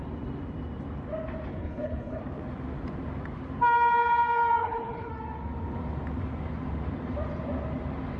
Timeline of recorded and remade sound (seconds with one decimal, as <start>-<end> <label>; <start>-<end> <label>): 0.0-1.5 recorded; 1.5-2.2 remade; 2.2-4.6 recorded; 4.6-5.1 remade; 5.1-8.2 recorded